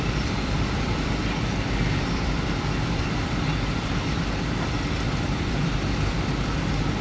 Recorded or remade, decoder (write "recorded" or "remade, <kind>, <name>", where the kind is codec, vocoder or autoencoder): remade, vocoder, BigVGAN v2